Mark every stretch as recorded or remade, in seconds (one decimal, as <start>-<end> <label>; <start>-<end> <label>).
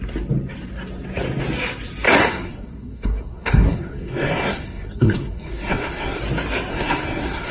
0.0-2.2 recorded; 2.2-6.2 remade; 6.2-6.7 recorded; 6.7-7.5 remade